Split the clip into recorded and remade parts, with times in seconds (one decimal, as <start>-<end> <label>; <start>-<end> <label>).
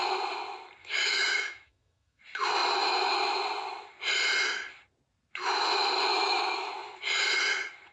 0.0-0.8 recorded; 0.8-2.2 remade; 2.2-6.1 recorded; 6.1-6.7 remade; 6.7-7.9 recorded